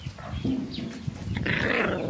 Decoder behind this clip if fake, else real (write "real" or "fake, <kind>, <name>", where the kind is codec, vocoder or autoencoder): real